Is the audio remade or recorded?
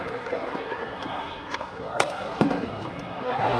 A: remade